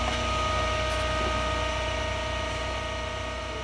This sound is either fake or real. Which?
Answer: real